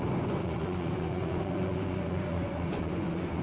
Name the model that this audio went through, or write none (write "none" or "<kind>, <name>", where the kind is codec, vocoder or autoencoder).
vocoder, Vocos